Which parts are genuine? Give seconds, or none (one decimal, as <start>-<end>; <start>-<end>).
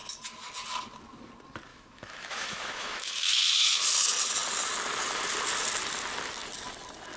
0.0-1.7; 3.8-7.2